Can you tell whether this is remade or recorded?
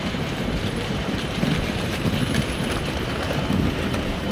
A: remade